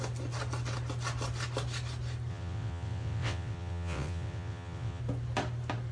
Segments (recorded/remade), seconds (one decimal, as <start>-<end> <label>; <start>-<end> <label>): 0.0-2.3 recorded; 2.3-5.0 remade; 5.0-5.9 recorded